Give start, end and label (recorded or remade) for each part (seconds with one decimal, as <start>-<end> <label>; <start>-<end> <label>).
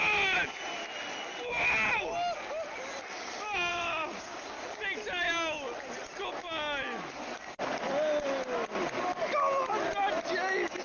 0.0-3.7 recorded; 3.7-4.8 remade; 4.8-10.8 recorded